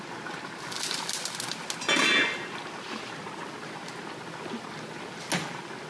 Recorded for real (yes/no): yes